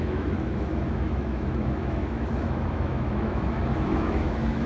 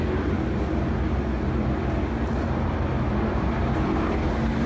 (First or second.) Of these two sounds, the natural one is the second